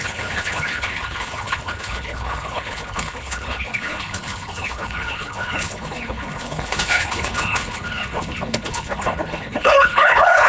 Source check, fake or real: fake